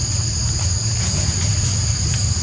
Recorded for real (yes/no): yes